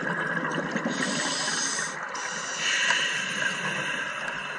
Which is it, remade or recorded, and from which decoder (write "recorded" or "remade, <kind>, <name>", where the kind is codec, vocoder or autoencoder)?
recorded